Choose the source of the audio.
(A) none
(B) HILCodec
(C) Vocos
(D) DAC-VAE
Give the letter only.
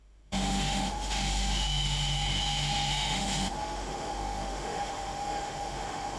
D